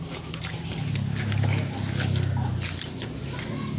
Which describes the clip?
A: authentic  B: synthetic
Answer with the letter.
A